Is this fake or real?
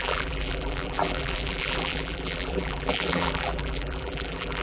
fake